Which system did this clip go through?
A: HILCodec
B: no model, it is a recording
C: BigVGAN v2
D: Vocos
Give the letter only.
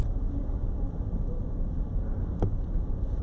B